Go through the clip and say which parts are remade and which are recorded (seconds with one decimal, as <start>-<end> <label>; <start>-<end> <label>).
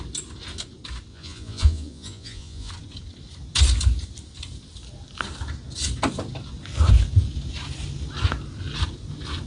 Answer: 0.0-1.1 recorded; 1.1-2.7 remade; 2.7-9.5 recorded